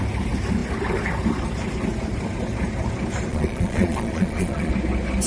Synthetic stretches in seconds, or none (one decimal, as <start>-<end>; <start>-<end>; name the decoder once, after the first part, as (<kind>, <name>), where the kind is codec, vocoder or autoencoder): 3.3-4.7 (vocoder, Vocos)